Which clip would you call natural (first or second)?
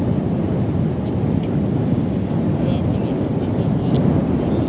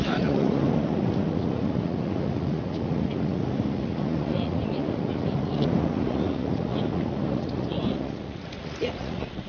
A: first